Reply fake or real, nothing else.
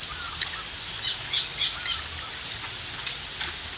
real